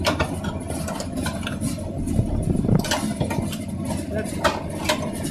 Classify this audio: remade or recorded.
recorded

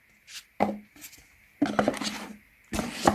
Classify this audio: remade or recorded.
recorded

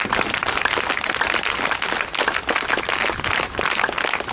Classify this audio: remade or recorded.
recorded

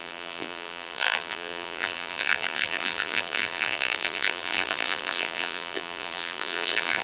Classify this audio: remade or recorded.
remade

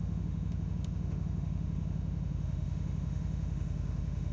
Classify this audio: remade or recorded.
remade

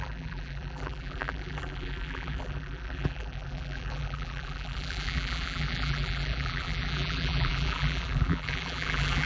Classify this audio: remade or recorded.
remade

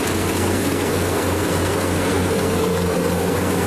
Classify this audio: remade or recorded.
remade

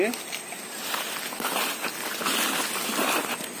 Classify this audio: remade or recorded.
recorded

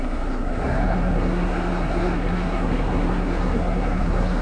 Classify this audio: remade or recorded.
remade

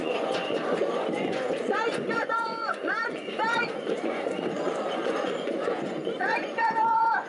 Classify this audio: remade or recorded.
remade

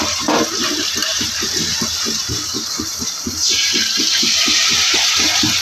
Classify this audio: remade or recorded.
remade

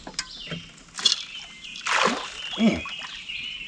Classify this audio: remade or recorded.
recorded